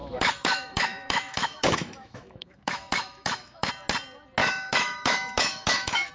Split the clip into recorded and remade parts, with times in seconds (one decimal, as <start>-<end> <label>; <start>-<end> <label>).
0.0-3.7 remade; 3.7-4.4 recorded; 4.4-6.1 remade